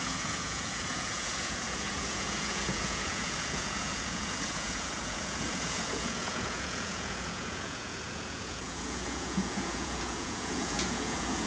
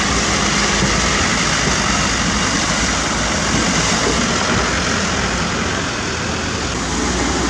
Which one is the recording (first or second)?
second